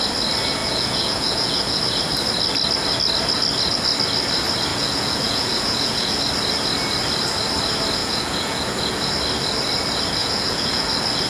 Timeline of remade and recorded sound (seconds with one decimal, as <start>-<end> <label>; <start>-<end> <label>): 0.0-0.6 recorded; 0.6-1.8 remade; 1.8-4.7 recorded; 4.7-6.2 remade; 6.2-8.0 recorded; 8.0-9.1 remade; 9.1-10.2 recorded; 10.2-10.9 remade; 10.9-11.3 recorded